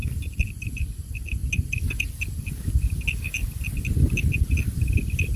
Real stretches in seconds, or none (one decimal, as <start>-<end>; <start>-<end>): 0.0-5.4